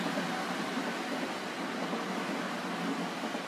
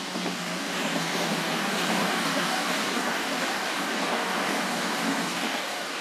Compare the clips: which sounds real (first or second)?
first